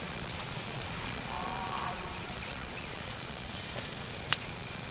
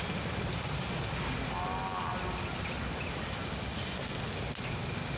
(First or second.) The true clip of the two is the second